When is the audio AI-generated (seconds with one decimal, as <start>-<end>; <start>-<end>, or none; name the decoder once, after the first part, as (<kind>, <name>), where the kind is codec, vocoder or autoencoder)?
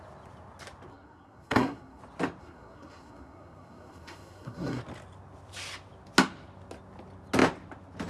0.9-2.0 (codec, SNAC); 2.4-4.8